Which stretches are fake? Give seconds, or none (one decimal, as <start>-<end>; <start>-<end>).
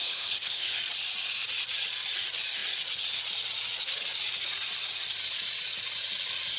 0.0-0.8